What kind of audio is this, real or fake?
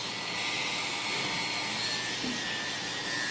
real